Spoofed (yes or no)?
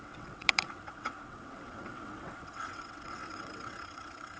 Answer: yes